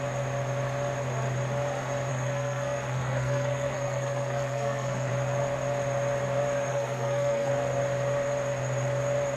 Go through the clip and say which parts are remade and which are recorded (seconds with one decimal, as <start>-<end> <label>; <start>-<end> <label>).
0.0-2.1 recorded; 2.1-5.1 remade; 5.1-6.7 recorded; 6.7-7.5 remade; 7.5-9.4 recorded